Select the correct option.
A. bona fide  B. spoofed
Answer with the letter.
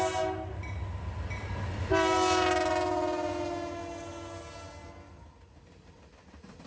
A